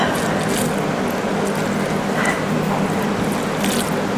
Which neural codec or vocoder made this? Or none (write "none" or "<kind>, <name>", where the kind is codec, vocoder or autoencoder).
none